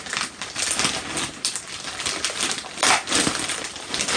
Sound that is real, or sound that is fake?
real